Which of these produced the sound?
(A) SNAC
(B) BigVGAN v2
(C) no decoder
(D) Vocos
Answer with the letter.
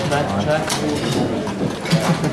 C